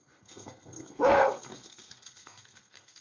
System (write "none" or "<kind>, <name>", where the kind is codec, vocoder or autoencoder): codec, SNAC